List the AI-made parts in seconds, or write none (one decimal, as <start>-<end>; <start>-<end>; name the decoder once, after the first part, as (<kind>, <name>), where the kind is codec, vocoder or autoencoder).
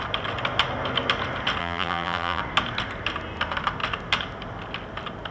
1.6-2.4 (vocoder, BigVGAN v2)